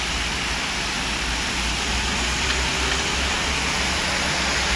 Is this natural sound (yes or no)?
yes